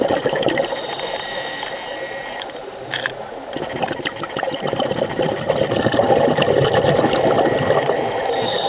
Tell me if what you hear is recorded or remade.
recorded